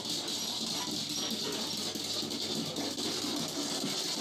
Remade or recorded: recorded